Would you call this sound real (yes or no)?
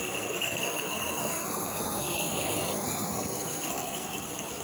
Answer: no